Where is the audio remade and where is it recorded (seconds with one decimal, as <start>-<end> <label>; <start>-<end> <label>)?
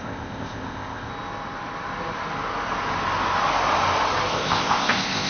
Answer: 0.0-1.1 remade; 1.1-4.3 recorded; 4.3-5.3 remade